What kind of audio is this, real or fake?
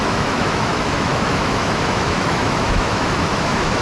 fake